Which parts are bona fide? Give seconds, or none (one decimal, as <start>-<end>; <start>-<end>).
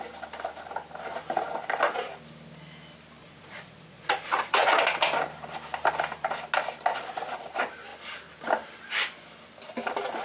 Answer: 0.0-3.2; 4.7-10.2